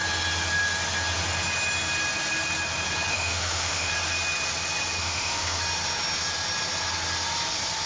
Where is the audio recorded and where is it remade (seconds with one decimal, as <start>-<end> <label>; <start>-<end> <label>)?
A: 0.0-3.1 recorded; 3.1-3.9 remade; 3.9-5.0 recorded; 5.0-5.6 remade; 5.6-7.9 recorded